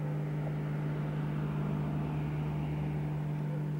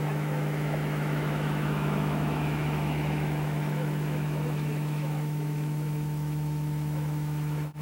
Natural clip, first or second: first